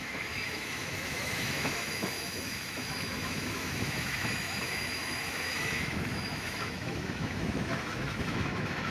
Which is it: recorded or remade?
remade